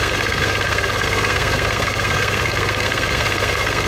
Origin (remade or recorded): remade